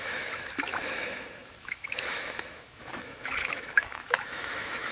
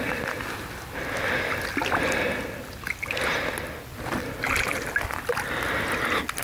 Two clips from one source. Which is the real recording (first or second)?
second